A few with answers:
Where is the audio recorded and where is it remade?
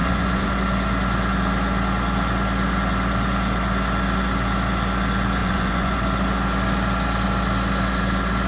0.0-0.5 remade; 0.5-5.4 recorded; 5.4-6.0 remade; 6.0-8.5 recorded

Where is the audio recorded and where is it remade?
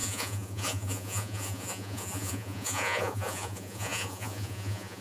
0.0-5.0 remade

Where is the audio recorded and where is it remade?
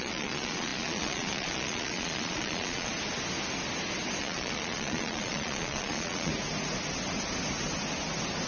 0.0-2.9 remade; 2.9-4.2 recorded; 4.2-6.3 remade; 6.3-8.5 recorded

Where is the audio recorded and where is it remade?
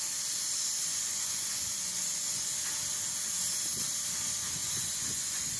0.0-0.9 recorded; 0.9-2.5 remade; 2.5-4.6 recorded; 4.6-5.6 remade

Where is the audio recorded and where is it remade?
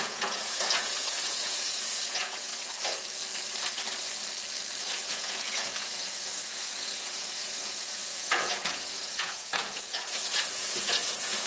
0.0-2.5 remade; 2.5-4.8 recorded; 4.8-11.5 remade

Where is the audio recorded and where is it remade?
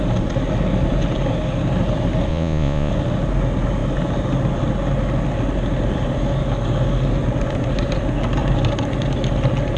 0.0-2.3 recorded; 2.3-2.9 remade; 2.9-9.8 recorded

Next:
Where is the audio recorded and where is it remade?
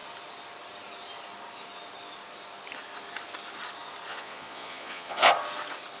0.0-4.1 recorded; 4.1-5.3 remade; 5.3-6.0 recorded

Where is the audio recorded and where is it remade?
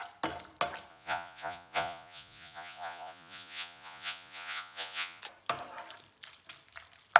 0.0-0.9 recorded; 0.9-5.2 remade; 5.2-7.2 recorded